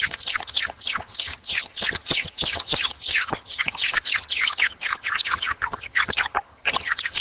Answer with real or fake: fake